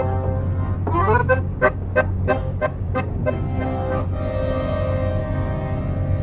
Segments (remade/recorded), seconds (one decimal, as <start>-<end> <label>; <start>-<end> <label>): 0.0-1.2 recorded; 1.2-4.0 remade; 4.0-5.2 recorded; 5.2-5.8 remade; 5.8-6.2 recorded